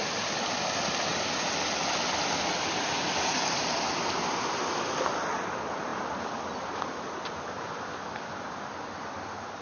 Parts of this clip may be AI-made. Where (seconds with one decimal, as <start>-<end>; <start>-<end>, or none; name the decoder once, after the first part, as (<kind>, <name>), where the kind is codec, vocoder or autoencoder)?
none